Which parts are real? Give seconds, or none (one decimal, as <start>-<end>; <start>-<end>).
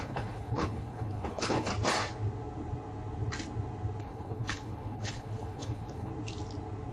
1.7-4.0; 6.1-6.9